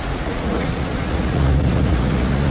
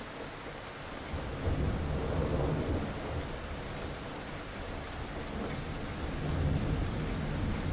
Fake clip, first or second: first